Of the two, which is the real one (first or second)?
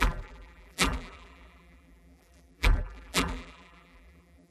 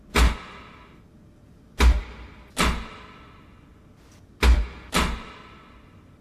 second